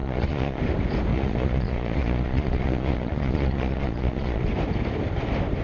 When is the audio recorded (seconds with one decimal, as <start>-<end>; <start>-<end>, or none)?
0.6-1.1; 4.5-5.6